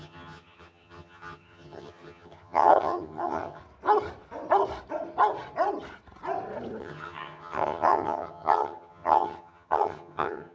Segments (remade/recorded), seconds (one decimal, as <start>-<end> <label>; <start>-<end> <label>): 0.0-3.6 remade; 3.6-6.8 recorded; 6.8-10.5 remade

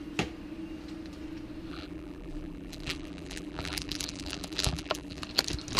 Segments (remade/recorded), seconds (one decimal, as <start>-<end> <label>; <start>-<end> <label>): 0.0-1.7 recorded; 1.7-5.2 remade; 5.2-5.8 recorded

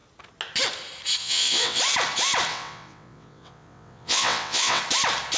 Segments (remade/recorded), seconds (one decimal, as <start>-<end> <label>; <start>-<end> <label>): 0.0-1.2 recorded; 1.2-1.8 remade; 1.8-2.5 recorded; 2.5-4.8 remade; 4.8-5.4 recorded

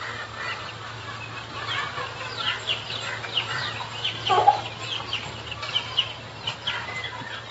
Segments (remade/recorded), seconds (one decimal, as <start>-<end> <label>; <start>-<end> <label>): 0.0-7.5 recorded

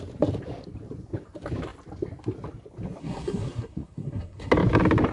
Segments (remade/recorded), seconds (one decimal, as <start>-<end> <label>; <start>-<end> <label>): 0.0-3.0 recorded; 3.0-4.5 remade; 4.5-5.1 recorded